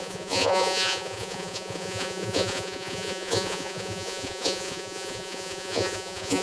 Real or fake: fake